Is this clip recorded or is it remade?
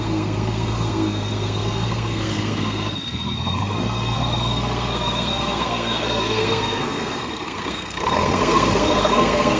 remade